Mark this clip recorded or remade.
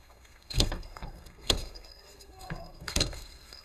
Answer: remade